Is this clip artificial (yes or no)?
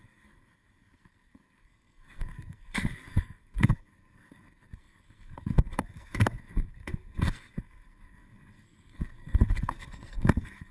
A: yes